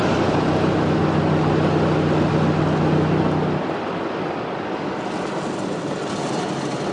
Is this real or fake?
real